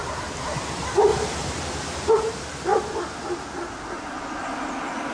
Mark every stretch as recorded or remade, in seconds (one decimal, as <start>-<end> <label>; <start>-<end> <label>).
0.0-5.1 recorded